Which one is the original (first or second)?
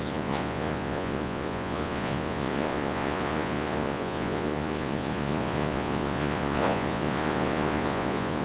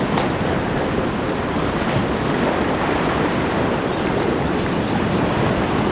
second